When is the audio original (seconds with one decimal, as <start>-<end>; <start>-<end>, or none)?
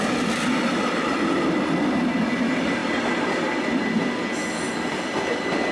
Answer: 0.0-1.1; 1.9-5.7